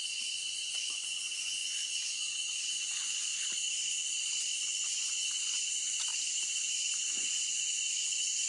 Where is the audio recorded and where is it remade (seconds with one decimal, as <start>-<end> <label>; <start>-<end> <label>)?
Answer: 0.0-3.3 remade; 3.3-4.4 recorded; 4.4-6.1 remade; 6.1-7.1 recorded; 7.1-8.5 remade